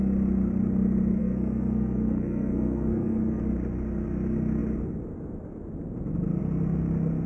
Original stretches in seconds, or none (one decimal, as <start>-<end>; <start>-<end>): 0.0-1.2; 3.4-7.3